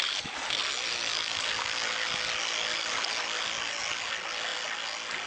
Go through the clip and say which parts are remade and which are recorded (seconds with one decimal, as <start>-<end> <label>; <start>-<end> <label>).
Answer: 0.0-5.3 recorded